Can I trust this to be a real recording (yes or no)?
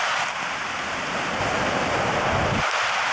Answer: yes